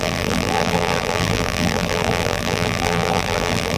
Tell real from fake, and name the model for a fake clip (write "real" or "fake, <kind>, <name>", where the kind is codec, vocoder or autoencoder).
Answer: fake, vocoder, BigVGAN v2